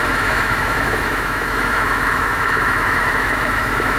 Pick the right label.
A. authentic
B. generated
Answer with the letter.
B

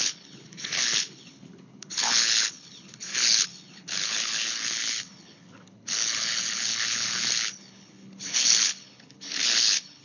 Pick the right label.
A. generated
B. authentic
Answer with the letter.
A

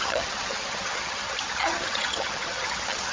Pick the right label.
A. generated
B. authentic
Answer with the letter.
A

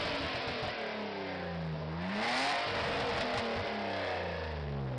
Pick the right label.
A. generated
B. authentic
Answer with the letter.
B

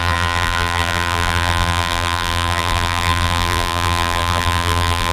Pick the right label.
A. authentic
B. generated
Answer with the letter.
B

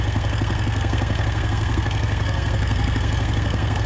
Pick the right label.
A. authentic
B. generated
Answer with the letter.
B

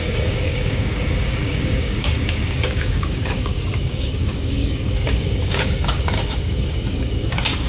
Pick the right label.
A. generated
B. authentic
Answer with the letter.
A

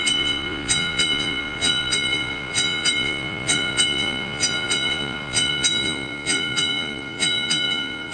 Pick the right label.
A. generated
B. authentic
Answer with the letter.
A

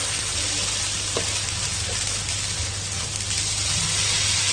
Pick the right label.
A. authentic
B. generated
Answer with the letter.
A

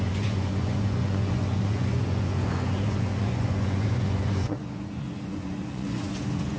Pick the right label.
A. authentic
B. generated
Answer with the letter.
B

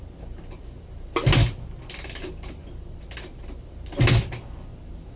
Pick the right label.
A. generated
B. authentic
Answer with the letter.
B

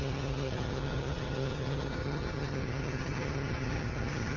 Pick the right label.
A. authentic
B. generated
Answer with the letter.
B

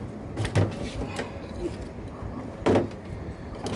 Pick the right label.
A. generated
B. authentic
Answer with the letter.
B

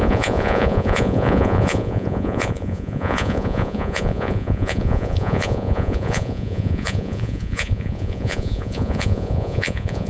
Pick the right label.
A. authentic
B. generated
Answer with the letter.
B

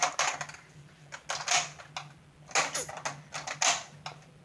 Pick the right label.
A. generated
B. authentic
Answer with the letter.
B